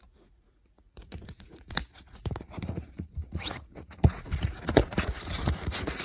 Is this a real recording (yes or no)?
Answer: no